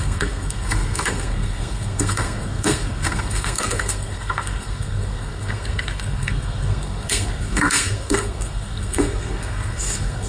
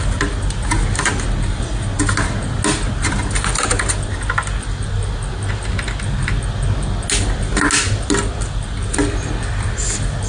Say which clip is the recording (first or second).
second